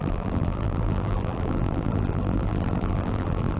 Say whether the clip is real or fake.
fake